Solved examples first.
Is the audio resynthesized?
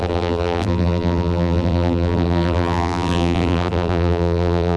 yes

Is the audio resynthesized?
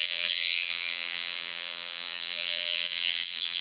yes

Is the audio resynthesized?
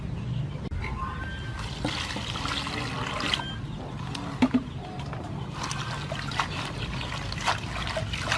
no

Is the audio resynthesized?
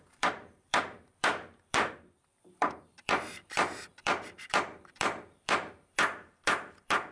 yes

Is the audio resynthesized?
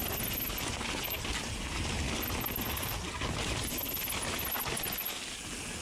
no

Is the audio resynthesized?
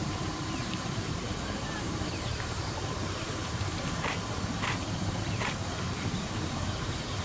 yes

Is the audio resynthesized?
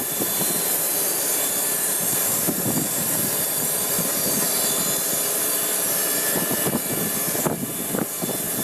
yes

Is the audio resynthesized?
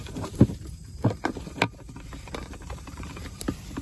yes